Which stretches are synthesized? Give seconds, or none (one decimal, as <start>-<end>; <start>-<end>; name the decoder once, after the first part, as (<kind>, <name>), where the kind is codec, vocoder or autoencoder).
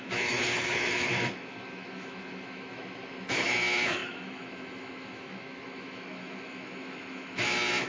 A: 0.0-7.9 (autoencoder, DAC-VAE)